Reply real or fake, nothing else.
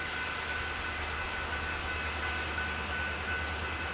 real